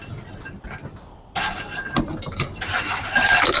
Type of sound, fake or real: real